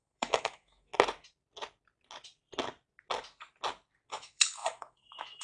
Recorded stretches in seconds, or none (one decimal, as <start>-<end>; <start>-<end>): 0.9-4.1